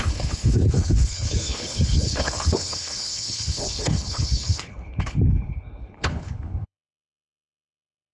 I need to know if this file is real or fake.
fake